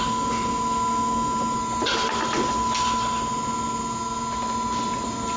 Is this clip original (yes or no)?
yes